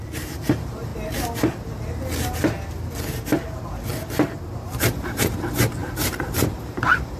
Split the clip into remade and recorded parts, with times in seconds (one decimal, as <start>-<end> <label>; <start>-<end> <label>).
0.0-0.9 remade; 0.9-4.4 recorded; 4.4-7.2 remade